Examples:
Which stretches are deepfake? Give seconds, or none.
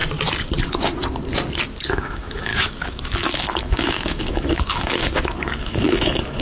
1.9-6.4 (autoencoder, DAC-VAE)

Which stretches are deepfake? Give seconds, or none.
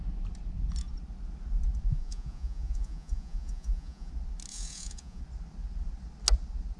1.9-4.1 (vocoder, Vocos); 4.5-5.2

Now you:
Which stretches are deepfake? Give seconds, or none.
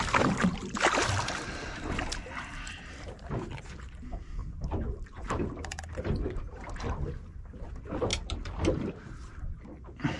4.4-5.3 (vocoder, BigVGAN v2)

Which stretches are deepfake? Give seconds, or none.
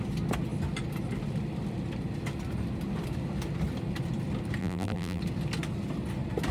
4.6-5.2 (vocoder, BigVGAN v2)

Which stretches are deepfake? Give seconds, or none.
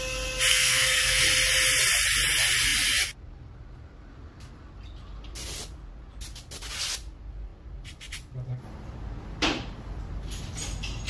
0.5-1.2 (codec, SNAC)